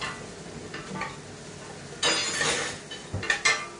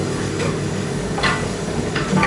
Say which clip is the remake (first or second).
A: second